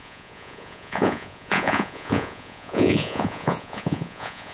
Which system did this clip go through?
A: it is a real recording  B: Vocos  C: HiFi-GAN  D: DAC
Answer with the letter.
B